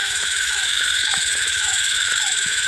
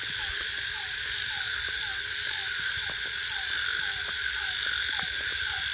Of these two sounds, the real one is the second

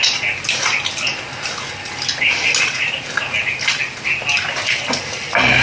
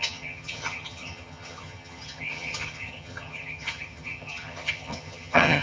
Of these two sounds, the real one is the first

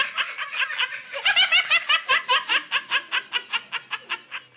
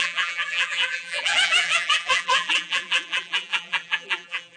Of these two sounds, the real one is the first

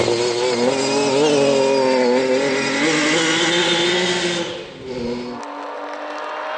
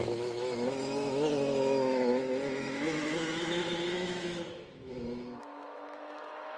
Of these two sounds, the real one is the first